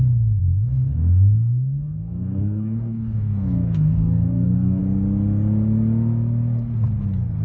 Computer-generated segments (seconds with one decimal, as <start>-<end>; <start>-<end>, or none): 0.4-4.8